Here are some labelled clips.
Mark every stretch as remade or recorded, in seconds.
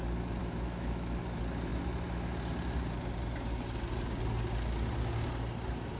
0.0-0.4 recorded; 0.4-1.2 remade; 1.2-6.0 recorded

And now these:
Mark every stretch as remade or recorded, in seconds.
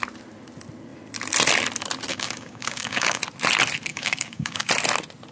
0.0-2.1 recorded; 2.1-3.2 remade; 3.2-3.9 recorded; 3.9-4.7 remade; 4.7-5.3 recorded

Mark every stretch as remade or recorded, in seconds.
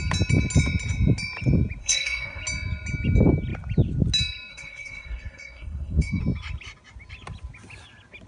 0.0-1.8 recorded; 1.8-2.4 remade; 2.4-4.5 recorded; 4.5-6.2 remade; 6.2-8.3 recorded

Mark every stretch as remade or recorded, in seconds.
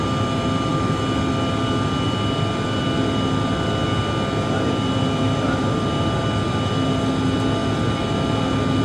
0.0-8.8 recorded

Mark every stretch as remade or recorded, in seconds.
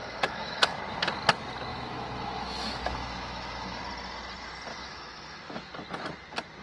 0.0-0.8 remade; 0.8-1.7 recorded; 1.7-3.8 remade; 3.8-4.7 recorded; 4.7-5.7 remade; 5.7-6.6 recorded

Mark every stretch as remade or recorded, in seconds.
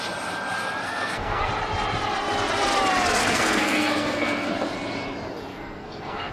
0.0-0.8 recorded; 0.8-1.5 remade; 1.5-3.2 recorded; 3.2-4.5 remade; 4.5-5.5 recorded; 5.5-6.3 remade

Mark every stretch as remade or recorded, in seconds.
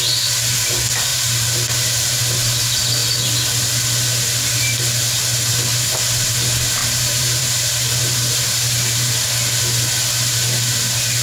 0.0-1.1 recorded; 1.1-2.2 remade; 2.2-6.8 recorded; 6.8-9.1 remade; 9.1-11.2 recorded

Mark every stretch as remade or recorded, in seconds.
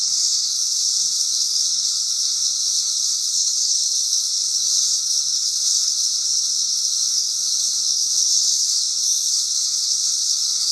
0.0-10.7 remade